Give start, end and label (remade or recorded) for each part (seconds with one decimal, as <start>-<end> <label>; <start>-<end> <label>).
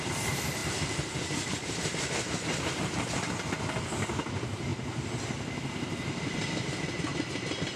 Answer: 0.0-0.6 recorded; 0.6-3.5 remade; 3.5-7.8 recorded